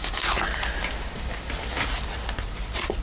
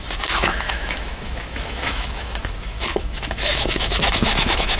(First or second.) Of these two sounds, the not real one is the second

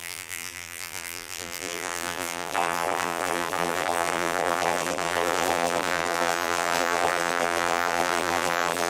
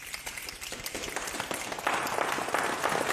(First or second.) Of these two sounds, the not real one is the first